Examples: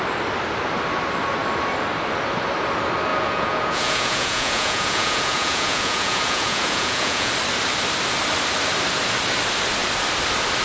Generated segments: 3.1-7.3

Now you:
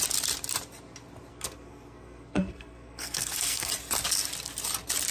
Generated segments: 1.3-3.7

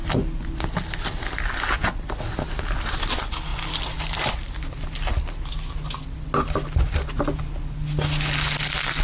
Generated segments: none

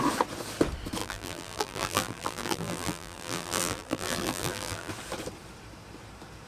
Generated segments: 1.0-4.9

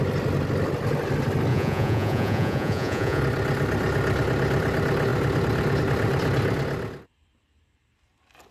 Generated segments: 1.5-3.2

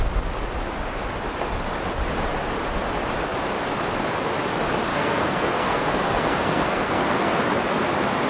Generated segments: 4.9-7.5

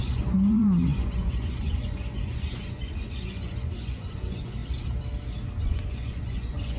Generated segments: 0.0-4.6; 5.6-6.8